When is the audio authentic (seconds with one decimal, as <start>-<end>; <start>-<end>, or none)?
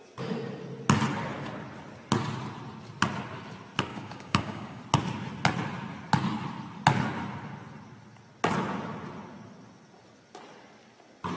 0.0-3.9; 4.8-11.4